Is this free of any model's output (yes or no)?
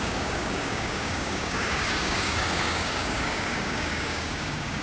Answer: no